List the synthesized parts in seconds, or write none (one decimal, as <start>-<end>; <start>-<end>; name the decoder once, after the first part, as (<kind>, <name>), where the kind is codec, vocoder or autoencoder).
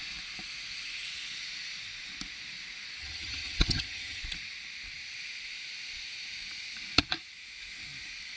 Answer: 3.0-4.2 (vocoder, HiFi-GAN)